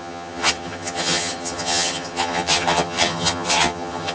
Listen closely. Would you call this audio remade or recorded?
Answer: remade